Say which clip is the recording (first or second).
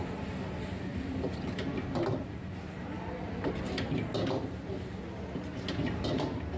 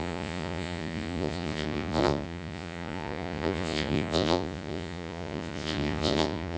first